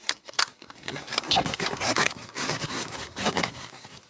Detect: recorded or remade remade